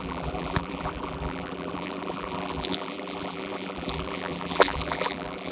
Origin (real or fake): fake